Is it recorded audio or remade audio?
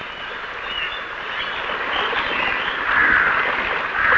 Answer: recorded